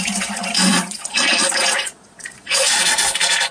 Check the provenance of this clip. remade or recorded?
remade